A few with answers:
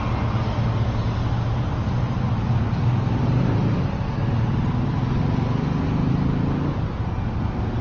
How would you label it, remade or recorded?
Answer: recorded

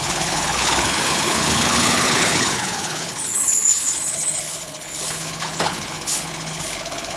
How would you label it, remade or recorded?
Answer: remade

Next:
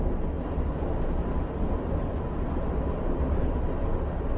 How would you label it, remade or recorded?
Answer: recorded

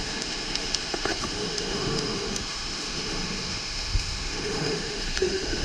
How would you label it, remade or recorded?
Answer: remade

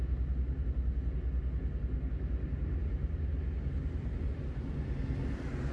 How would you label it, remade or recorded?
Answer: recorded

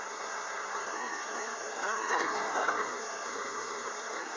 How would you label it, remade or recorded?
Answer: remade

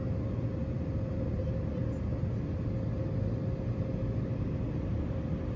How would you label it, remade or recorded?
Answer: recorded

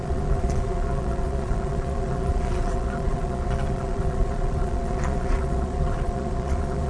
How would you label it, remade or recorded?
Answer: remade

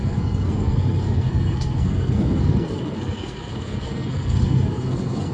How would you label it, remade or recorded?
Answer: remade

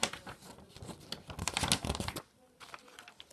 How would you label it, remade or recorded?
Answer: recorded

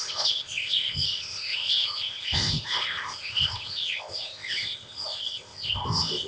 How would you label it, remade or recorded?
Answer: remade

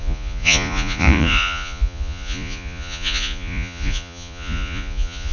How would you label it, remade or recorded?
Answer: remade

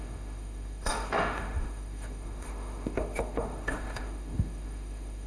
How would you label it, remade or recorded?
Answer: remade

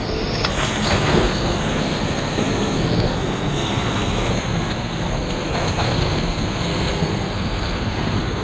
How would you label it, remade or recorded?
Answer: remade